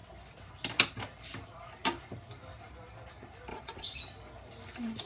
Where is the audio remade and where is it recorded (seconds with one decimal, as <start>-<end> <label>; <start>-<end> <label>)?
0.0-3.5 recorded; 3.5-4.0 remade; 4.0-5.1 recorded